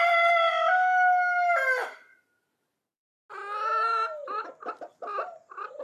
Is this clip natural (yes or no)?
yes